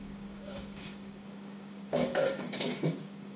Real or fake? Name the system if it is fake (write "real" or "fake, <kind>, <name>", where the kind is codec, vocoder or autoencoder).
fake, codec, DAC